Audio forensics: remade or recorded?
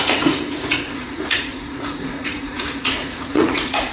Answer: remade